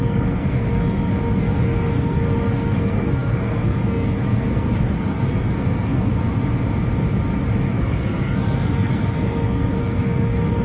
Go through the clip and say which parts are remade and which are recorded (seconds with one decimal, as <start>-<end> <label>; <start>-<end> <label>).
0.0-6.1 remade; 6.1-7.7 recorded; 7.7-10.6 remade